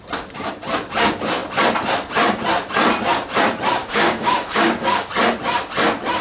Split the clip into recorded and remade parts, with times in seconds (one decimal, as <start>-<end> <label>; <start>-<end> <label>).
0.0-3.8 recorded; 3.8-5.1 remade; 5.1-6.2 recorded